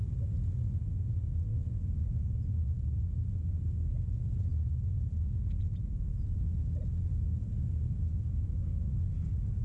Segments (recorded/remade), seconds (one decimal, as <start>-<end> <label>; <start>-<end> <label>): 0.0-9.6 recorded